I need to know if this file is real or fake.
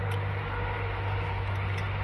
real